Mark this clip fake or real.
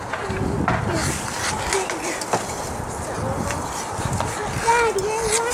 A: real